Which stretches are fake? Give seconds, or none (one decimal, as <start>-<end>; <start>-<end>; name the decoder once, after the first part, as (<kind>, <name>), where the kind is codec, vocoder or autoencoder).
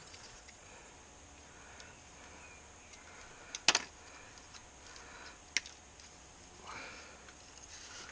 0.0-0.9 (vocoder, Vocos)